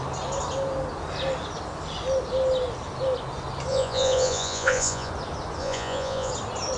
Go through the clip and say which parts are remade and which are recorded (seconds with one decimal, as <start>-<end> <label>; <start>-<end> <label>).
0.0-3.7 recorded; 3.7-5.1 remade; 5.1-5.6 recorded; 5.6-6.3 remade; 6.3-6.8 recorded